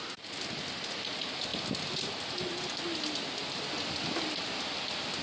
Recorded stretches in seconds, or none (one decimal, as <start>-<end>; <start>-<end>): 0.0-5.2